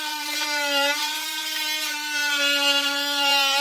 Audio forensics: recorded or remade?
remade